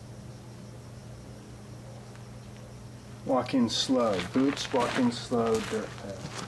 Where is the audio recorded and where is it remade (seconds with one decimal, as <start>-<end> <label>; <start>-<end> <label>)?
0.0-6.5 recorded

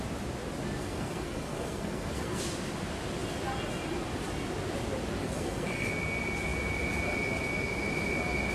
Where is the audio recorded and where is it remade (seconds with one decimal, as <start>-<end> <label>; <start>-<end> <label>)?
0.0-0.8 recorded; 0.8-2.4 remade; 2.4-5.2 recorded; 5.2-5.9 remade; 5.9-8.5 recorded

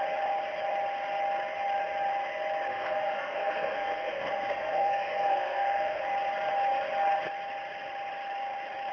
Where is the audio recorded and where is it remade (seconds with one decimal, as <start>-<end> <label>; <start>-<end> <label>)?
0.0-2.7 recorded; 2.7-6.0 remade; 6.0-8.9 recorded

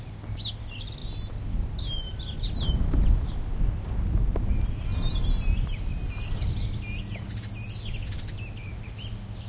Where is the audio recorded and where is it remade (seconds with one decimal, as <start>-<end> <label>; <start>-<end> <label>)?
0.0-9.5 recorded

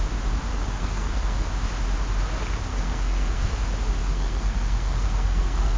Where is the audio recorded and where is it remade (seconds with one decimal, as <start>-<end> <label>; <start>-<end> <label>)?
0.0-0.5 recorded; 0.5-1.5 remade; 1.5-2.7 recorded; 2.7-3.6 remade; 3.6-4.0 recorded; 4.0-5.8 remade

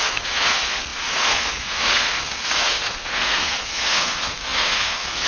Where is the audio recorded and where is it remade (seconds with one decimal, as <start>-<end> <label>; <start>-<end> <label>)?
0.0-5.3 remade

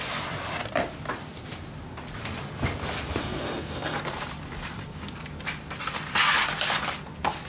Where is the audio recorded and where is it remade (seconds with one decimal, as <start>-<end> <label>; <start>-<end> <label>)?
0.0-3.2 recorded; 3.2-4.0 remade; 4.0-7.5 recorded